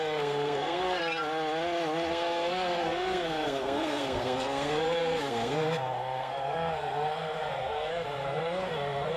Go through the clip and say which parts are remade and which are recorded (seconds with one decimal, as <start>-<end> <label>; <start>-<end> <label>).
0.0-1.0 remade; 1.0-2.1 recorded; 2.1-9.2 remade